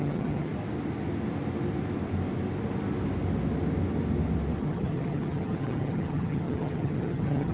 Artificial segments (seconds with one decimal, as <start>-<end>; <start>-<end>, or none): 0.0-0.5; 4.6-7.5